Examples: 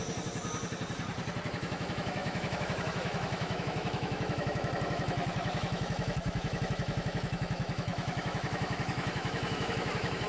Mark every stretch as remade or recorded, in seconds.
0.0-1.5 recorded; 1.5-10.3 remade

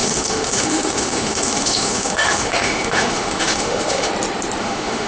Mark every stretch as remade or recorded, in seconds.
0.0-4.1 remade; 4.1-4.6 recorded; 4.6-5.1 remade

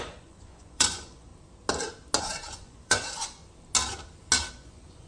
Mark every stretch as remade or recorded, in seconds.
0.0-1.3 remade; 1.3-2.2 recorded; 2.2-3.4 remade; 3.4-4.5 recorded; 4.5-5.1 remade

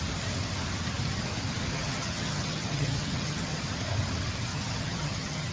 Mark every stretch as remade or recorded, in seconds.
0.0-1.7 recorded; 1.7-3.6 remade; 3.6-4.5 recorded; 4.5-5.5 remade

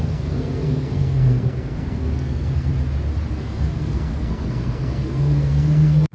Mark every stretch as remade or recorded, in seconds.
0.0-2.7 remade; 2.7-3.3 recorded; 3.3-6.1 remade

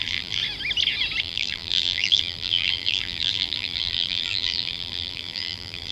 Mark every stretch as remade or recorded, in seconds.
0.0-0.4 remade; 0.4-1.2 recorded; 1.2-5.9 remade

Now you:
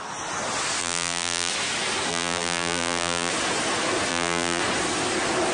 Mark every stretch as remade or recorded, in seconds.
0.0-0.8 recorded; 0.8-1.5 remade; 1.5-2.1 recorded; 2.1-3.3 remade; 3.3-4.1 recorded; 4.1-4.6 remade; 4.6-5.5 recorded

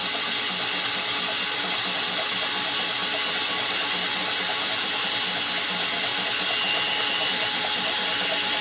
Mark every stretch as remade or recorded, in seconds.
0.0-4.2 recorded; 4.2-5.0 remade; 5.0-8.6 recorded